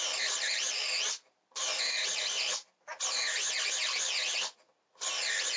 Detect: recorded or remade recorded